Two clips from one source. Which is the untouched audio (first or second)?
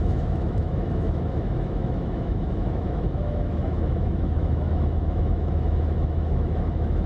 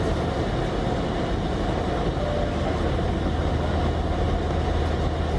second